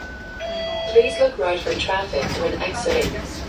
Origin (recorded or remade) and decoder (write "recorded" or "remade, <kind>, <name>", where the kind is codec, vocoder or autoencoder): remade, vocoder, BigVGAN v2